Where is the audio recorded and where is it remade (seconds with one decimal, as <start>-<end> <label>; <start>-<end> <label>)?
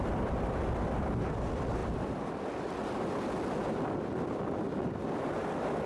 0.0-5.9 recorded